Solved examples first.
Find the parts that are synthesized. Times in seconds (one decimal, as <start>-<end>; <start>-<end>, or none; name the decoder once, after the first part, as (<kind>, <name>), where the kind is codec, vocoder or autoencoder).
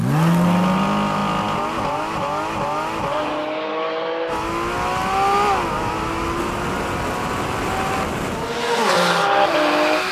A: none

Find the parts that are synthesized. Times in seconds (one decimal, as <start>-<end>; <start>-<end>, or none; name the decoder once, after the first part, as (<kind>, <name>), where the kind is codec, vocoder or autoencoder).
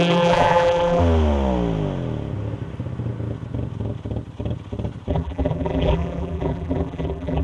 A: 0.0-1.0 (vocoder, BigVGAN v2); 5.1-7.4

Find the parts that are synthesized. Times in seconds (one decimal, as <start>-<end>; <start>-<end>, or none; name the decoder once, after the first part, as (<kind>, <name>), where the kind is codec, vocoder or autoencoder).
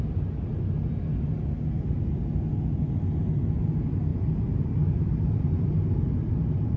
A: 4.1-6.8 (vocoder, BigVGAN v2)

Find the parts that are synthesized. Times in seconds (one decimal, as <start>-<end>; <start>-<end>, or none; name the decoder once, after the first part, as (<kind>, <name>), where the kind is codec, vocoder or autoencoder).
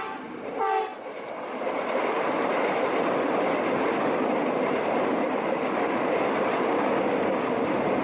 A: none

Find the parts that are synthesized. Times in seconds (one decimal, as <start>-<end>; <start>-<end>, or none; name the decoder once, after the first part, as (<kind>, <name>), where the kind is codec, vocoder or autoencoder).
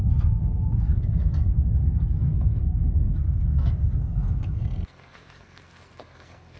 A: 0.0-6.6 (codec, SNAC)